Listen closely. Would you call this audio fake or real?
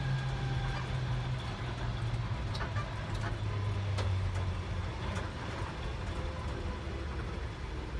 real